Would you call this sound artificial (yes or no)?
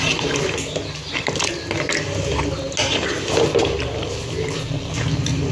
no